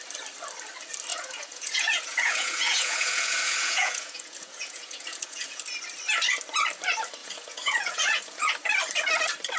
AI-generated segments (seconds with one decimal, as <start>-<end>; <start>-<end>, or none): 1.1-5.6; 7.2-8.4